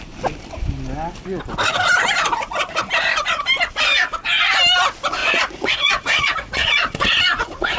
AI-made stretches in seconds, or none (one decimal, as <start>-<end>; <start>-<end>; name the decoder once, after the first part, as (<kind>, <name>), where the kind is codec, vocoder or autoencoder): 5.2-7.8 (vocoder, Vocos)